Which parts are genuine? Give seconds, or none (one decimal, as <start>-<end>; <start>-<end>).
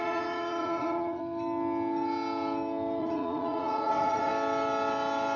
1.2-3.0; 4.3-5.4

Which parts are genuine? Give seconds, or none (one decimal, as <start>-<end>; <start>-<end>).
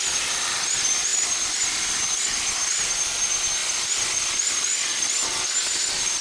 0.0-6.2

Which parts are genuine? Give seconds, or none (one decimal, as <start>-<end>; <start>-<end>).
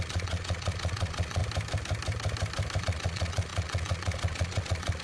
1.4-2.8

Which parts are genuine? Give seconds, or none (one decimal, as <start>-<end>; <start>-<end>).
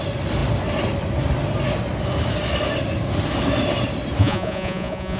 0.0-4.2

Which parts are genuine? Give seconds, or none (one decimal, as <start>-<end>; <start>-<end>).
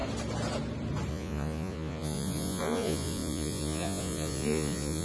0.0-1.1